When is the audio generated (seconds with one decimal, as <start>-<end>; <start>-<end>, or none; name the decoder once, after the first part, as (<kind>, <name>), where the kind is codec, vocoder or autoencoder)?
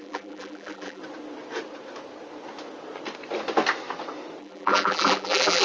0.0-1.0 (vocoder, BigVGAN v2); 4.4-5.6